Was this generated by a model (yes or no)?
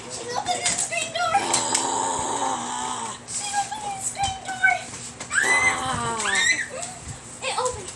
no